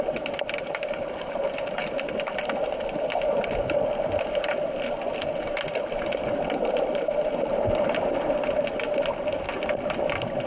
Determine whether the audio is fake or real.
real